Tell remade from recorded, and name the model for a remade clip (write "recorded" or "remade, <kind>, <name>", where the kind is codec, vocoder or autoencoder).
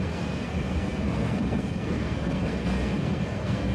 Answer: remade, codec, SNAC